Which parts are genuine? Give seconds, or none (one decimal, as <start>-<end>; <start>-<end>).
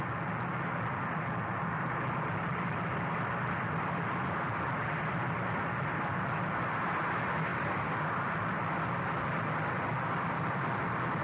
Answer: 0.0-7.5; 8.0-9.9; 10.6-11.2